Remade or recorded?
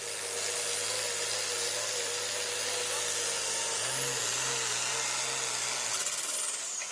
recorded